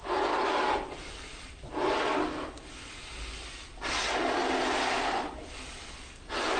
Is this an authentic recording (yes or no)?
yes